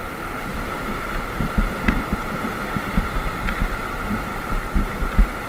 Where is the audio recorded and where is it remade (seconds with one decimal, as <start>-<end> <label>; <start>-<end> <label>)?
0.0-0.5 recorded; 0.5-3.8 remade; 3.8-4.3 recorded; 4.3-5.1 remade; 5.1-5.5 recorded